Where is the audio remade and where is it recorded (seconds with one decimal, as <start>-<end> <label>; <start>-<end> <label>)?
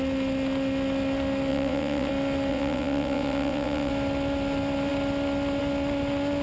0.0-1.5 recorded; 1.5-2.1 remade; 2.1-2.5 recorded; 2.5-3.9 remade; 3.9-6.4 recorded